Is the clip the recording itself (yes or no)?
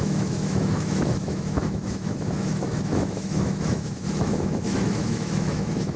no